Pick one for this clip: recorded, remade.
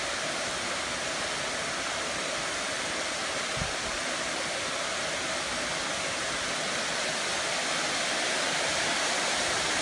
recorded